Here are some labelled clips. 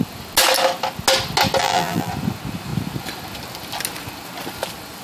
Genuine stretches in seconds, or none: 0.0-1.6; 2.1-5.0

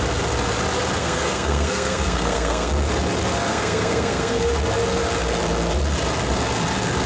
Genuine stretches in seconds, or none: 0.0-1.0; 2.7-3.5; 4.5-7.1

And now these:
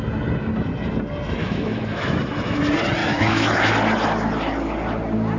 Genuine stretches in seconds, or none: 0.0-1.4; 2.6-3.0; 3.7-5.4